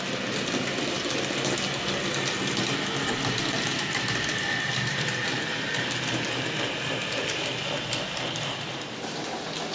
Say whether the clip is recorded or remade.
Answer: recorded